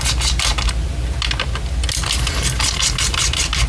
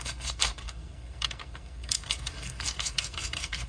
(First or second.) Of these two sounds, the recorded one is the first